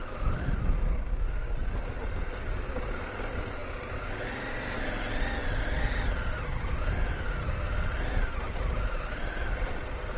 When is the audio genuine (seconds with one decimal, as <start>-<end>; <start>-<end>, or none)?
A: 0.0-10.2